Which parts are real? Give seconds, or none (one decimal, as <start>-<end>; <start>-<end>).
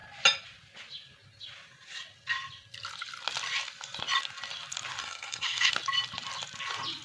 0.0-5.0; 5.7-7.0